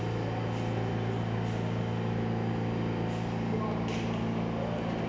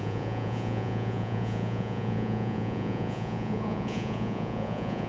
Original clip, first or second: first